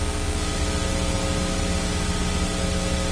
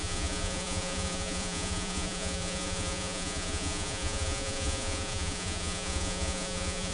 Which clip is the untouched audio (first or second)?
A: first